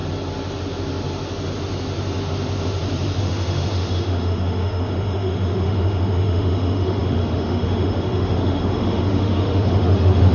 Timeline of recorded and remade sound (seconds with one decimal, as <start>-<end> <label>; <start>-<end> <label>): 0.0-3.2 recorded; 3.2-10.3 remade